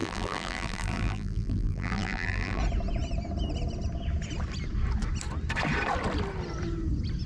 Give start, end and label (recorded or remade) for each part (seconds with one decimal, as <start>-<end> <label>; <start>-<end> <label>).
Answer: 0.0-2.6 remade; 2.6-7.3 recorded